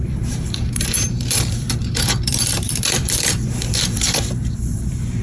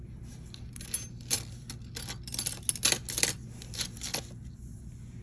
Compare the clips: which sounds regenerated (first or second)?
first